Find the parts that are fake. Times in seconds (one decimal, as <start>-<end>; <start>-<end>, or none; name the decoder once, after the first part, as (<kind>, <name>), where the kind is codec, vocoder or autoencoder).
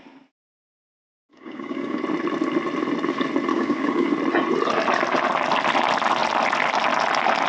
1.3-2.0 (codec, DAC); 3.5-4.1